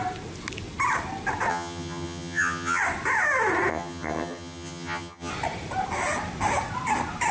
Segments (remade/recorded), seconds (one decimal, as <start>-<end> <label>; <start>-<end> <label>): 0.0-1.5 recorded; 1.5-2.8 remade; 2.8-3.7 recorded; 3.7-5.3 remade; 5.3-7.3 recorded